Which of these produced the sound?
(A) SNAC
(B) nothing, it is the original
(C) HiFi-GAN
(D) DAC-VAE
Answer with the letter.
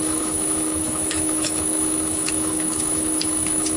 D